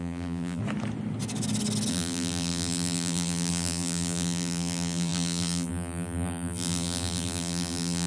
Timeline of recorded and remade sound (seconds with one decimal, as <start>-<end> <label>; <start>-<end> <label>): 0.0-0.6 remade; 0.6-1.9 recorded; 1.9-8.1 remade